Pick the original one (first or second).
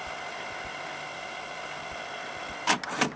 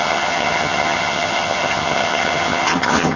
first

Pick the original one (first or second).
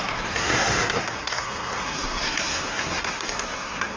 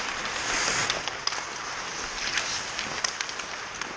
second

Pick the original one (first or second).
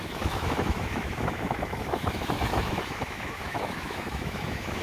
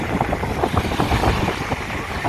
second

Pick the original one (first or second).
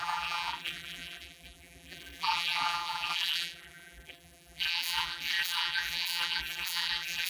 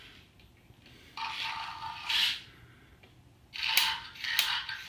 second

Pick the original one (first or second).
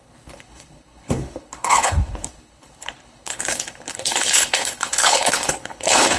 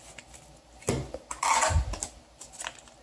second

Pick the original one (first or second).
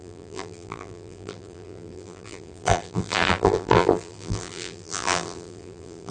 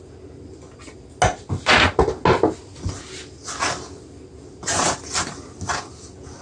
second